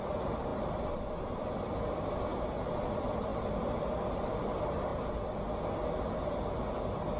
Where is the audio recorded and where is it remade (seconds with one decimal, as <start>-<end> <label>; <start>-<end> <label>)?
0.0-0.5 remade; 0.5-1.3 recorded; 1.3-2.3 remade; 2.3-2.8 recorded; 2.8-3.3 remade; 3.3-3.8 recorded; 3.8-4.9 remade; 4.9-7.2 recorded